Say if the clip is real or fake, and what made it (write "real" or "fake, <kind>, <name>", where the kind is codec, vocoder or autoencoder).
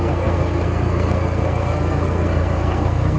fake, codec, SNAC